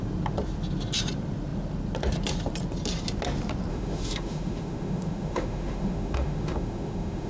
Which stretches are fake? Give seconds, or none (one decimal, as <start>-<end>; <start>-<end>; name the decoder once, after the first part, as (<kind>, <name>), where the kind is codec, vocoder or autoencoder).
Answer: 3.7-7.3 (autoencoder, DAC-VAE)